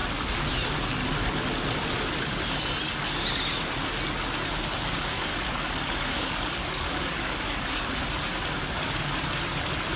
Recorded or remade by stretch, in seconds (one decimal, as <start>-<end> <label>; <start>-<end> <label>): 0.0-5.3 recorded; 5.3-8.0 remade; 8.0-10.0 recorded